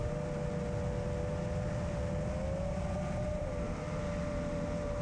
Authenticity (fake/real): real